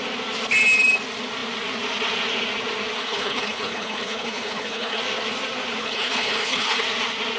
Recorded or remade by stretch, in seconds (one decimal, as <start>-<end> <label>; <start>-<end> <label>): 0.0-3.0 recorded; 3.0-5.0 remade; 5.0-5.8 recorded; 5.8-6.8 remade; 6.8-7.4 recorded